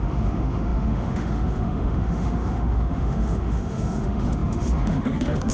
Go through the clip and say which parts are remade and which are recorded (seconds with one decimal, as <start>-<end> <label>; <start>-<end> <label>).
0.0-5.5 remade